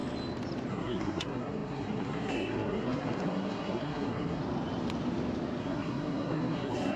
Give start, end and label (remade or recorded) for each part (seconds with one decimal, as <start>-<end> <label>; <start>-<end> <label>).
0.0-0.7 recorded; 0.7-4.4 remade; 4.4-5.6 recorded; 5.6-7.0 remade